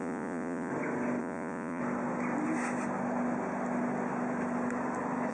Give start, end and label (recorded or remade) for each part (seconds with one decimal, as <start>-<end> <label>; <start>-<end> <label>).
0.0-0.7 remade; 0.7-1.2 recorded; 1.2-1.8 remade; 1.8-5.3 recorded